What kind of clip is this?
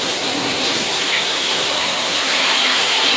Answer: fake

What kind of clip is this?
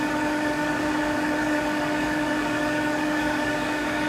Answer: fake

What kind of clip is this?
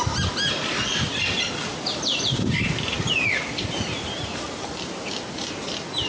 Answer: real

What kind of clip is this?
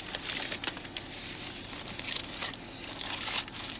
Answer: real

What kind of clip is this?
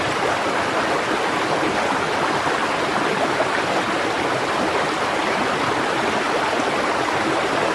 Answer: real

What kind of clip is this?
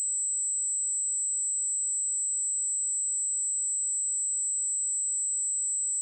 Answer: real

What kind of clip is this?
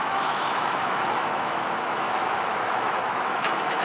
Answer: fake